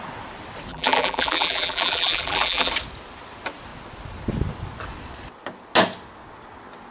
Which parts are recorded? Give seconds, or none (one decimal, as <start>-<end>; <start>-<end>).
0.0-0.7; 2.7-6.9